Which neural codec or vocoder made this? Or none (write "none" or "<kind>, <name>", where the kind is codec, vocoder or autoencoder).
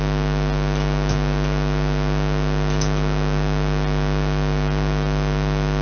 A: none